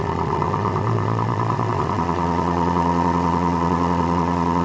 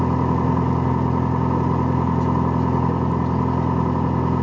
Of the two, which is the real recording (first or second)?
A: second